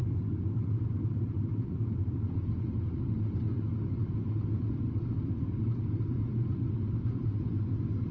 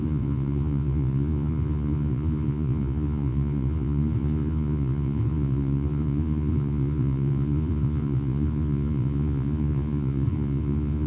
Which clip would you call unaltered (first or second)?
first